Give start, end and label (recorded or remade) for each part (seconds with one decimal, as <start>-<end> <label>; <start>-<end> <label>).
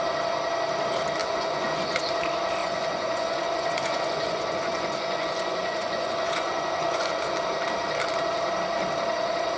0.0-1.2 recorded; 1.2-2.0 remade; 2.0-2.6 recorded; 2.6-7.2 remade; 7.2-9.6 recorded